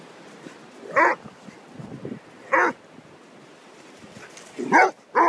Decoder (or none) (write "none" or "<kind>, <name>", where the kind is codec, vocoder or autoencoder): none